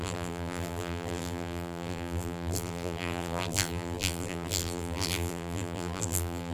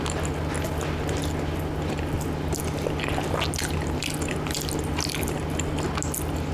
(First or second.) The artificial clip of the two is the first